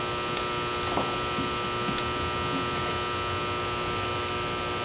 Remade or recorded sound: recorded